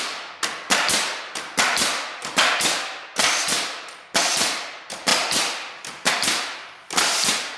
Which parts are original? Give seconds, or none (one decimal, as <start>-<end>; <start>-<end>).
0.0-5.1; 6.1-7.6